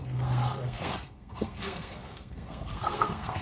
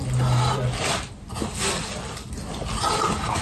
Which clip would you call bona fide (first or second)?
second